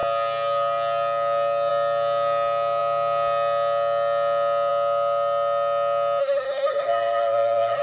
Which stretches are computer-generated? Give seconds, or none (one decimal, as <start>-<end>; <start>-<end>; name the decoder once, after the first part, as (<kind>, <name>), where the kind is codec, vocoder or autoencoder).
6.2-7.8 (codec, SNAC)